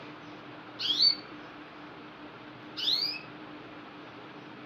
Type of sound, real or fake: real